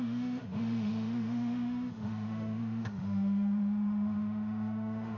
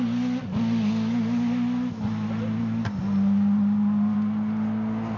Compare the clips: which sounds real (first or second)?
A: second